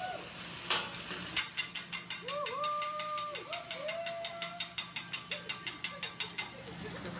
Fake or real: real